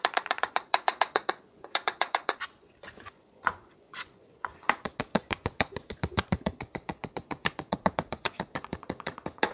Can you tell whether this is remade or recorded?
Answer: remade